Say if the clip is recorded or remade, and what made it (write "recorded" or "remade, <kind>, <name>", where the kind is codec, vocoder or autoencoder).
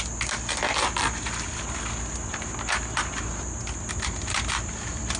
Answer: recorded